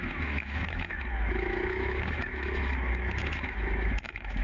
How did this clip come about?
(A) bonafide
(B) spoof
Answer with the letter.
B